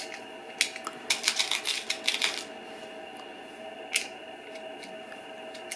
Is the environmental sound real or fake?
real